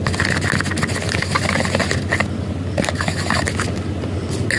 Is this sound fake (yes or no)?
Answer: no